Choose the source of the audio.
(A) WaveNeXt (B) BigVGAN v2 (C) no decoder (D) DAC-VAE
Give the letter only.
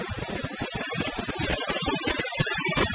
C